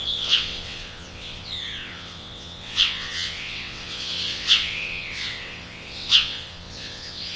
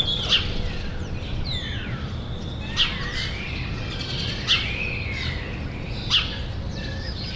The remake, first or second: first